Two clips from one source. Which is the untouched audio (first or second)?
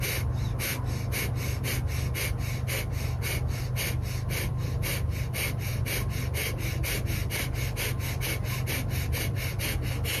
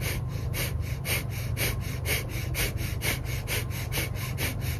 first